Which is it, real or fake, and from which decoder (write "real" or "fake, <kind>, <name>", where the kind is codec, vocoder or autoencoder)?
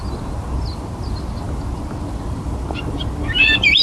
real